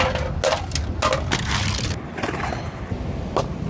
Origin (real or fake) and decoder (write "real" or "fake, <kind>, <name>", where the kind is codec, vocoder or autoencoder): real